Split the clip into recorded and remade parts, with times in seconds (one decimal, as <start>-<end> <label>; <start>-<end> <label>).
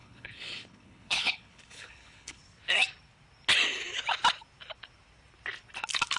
0.0-2.4 remade; 2.4-6.2 recorded